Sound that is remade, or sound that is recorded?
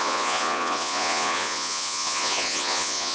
remade